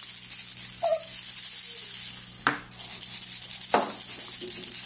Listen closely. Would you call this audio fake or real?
real